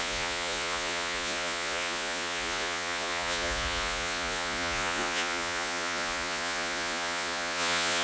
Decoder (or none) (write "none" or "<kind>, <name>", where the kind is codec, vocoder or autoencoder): vocoder, Vocos